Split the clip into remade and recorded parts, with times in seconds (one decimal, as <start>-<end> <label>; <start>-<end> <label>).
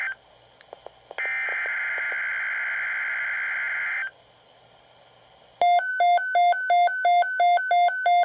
0.0-8.2 recorded